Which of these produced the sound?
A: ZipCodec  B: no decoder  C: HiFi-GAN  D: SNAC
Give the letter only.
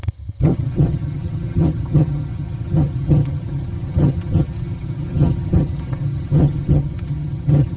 C